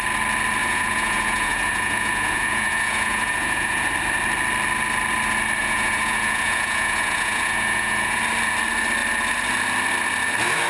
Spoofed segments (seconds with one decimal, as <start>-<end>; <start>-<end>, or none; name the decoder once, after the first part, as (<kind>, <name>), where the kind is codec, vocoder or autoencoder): 0.6-3.9 (vocoder, Vocos); 5.6-8.2